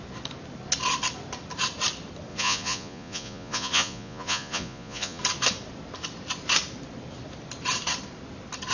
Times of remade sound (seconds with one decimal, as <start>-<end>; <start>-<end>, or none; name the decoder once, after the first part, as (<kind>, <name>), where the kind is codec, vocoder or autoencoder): 2.3-5.2 (vocoder, Vocos)